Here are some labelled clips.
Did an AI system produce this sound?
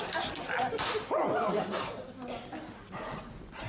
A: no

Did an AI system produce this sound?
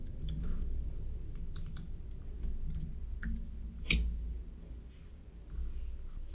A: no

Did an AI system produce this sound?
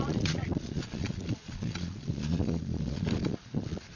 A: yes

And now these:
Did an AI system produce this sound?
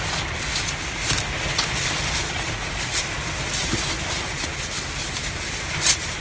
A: no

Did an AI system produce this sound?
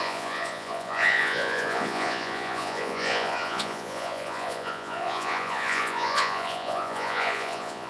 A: yes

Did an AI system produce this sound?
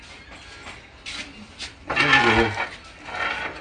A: no